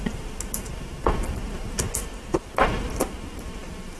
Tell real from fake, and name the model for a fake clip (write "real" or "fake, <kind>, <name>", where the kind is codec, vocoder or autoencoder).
real